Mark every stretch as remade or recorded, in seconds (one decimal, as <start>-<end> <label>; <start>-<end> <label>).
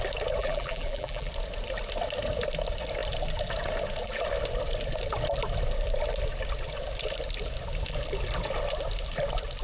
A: 0.0-0.4 recorded; 0.4-1.3 remade; 1.3-9.6 recorded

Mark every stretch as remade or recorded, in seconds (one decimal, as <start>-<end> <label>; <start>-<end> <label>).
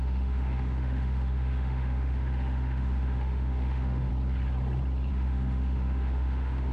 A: 0.0-4.1 remade; 4.1-5.1 recorded; 5.1-6.7 remade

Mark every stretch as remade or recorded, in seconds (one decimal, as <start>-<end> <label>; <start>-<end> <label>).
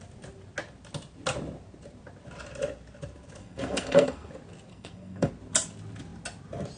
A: 0.0-3.4 recorded; 3.4-4.3 remade; 4.3-4.7 recorded; 4.7-5.3 remade; 5.3-6.8 recorded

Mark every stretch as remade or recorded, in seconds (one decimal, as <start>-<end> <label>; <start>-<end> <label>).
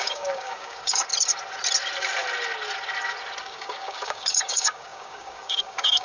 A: 0.0-1.1 remade; 1.1-3.4 recorded; 3.4-6.0 remade